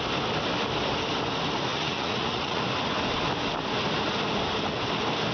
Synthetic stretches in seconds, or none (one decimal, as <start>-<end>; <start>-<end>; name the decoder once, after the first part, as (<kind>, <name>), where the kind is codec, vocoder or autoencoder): 1.7-2.6 (vocoder, Vocos)